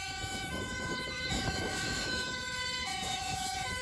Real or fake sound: fake